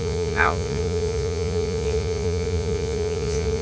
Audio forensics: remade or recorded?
remade